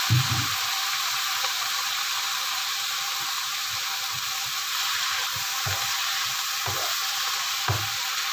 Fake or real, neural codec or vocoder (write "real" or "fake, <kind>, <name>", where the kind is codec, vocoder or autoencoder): real